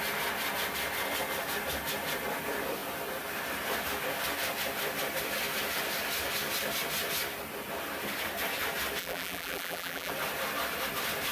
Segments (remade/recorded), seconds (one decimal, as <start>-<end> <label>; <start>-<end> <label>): 0.0-9.0 recorded; 9.0-10.1 remade; 10.1-11.3 recorded